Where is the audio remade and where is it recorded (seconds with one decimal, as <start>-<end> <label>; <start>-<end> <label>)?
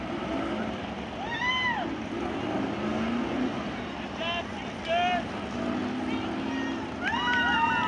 0.0-7.9 recorded